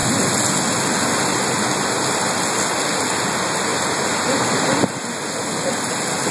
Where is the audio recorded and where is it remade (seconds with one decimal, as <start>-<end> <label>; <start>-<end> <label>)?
0.0-6.3 recorded